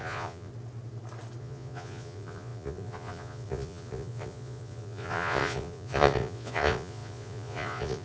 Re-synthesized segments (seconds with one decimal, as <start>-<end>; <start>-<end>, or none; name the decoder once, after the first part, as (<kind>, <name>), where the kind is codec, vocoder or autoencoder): 0.0-0.5 (vocoder, Vocos); 1.4-8.0